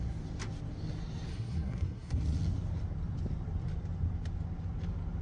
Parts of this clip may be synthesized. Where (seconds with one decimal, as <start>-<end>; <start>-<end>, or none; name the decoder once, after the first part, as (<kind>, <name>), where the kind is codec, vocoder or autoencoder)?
1.3-2.2 (codec, SNAC)

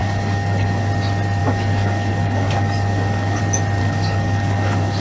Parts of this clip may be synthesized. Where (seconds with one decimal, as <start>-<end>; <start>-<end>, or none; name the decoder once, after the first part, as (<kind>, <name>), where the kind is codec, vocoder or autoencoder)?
0.0-0.9 (codec, DAC); 1.4-3.4; 3.8-5.0

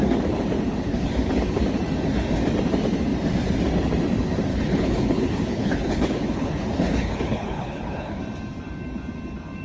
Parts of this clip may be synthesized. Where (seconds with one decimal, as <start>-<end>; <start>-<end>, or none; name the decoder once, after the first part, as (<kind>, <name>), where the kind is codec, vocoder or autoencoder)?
0.9-1.6 (codec, HILCodec); 4.5-8.2